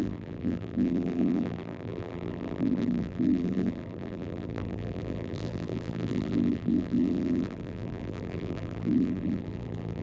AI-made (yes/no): yes